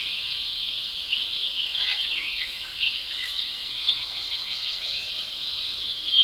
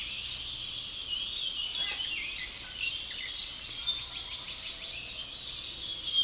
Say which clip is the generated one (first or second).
first